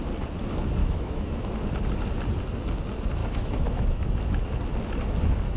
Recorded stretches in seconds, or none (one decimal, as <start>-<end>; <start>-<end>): 0.0-0.8; 1.5-3.2; 4.1-5.6